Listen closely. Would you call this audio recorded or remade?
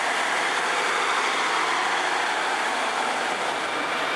recorded